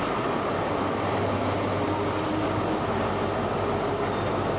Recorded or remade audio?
recorded